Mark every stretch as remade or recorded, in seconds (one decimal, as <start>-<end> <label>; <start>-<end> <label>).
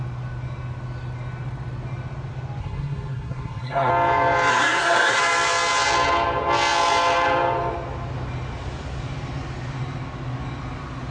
0.0-2.6 recorded; 2.6-3.9 remade; 3.9-4.5 recorded; 4.5-5.2 remade; 5.2-11.1 recorded